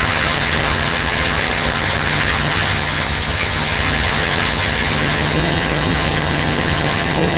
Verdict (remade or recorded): remade